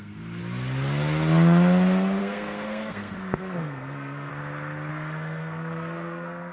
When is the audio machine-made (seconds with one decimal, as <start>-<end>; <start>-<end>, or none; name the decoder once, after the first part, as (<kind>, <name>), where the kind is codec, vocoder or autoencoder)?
0.0-0.4 (codec, SNAC); 2.2-4.3; 4.9-6.5